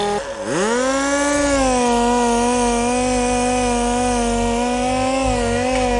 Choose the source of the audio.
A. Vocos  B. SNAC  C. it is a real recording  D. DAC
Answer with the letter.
C